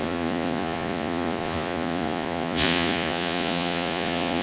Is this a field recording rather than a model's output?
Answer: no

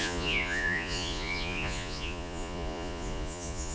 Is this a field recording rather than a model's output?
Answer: no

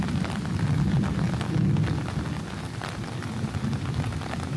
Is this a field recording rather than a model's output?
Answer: yes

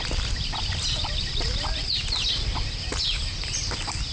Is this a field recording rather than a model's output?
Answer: yes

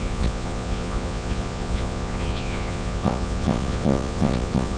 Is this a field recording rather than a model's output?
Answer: no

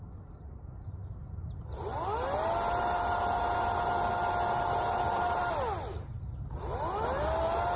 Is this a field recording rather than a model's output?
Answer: yes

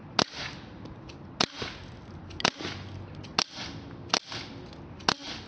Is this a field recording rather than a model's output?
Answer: yes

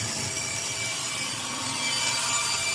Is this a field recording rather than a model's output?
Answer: yes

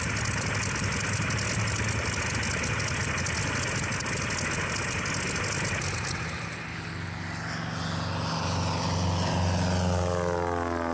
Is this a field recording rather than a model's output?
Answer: yes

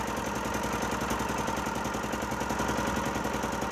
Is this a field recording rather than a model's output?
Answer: yes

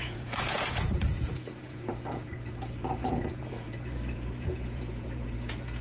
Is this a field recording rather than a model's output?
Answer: no